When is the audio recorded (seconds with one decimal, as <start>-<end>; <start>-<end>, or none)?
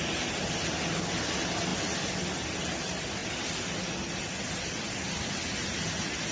0.0-6.3